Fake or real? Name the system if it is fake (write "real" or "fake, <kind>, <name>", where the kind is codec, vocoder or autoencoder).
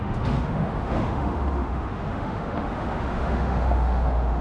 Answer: fake, autoencoder, DAC-VAE